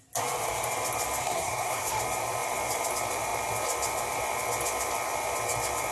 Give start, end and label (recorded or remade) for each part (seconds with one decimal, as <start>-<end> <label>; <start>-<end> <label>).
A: 0.0-1.2 recorded; 1.2-2.0 remade; 2.0-5.9 recorded

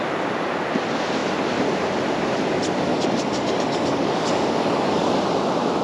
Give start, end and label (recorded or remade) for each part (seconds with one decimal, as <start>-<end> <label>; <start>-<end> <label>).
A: 0.0-2.9 recorded; 2.9-5.1 remade; 5.1-5.8 recorded

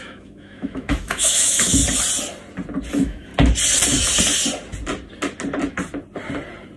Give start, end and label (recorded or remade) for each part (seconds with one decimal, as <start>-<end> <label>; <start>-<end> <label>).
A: 0.0-1.8 remade; 1.8-2.9 recorded; 2.9-3.3 remade; 3.3-6.8 recorded

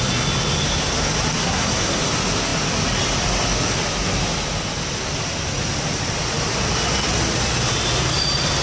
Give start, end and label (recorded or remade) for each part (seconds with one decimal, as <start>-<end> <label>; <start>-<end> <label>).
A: 0.0-1.4 recorded; 1.4-2.0 remade; 2.0-8.6 recorded

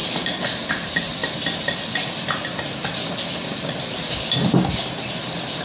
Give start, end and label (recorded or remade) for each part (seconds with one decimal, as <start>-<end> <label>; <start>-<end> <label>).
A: 0.0-5.6 recorded